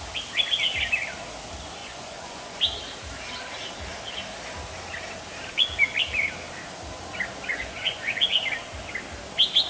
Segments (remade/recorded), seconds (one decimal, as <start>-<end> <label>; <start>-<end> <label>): 0.0-1.8 recorded; 1.8-2.6 remade; 2.6-7.5 recorded; 7.5-8.4 remade; 8.4-9.7 recorded